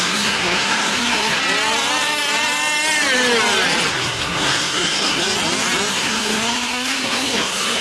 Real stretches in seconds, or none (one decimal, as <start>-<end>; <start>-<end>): 1.4-3.9; 5.2-5.9